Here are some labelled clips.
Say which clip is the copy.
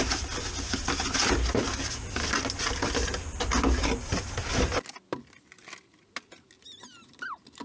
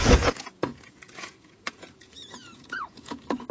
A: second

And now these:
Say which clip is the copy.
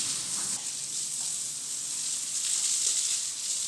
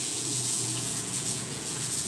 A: second